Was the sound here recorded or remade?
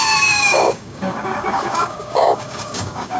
remade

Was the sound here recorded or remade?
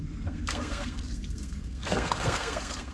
remade